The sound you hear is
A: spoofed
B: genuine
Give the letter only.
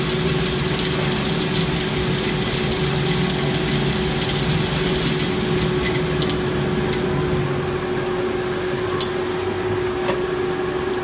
B